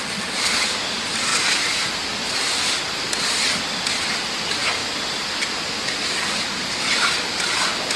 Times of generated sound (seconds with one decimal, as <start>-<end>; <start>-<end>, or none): 0.0-1.3; 3.9-4.8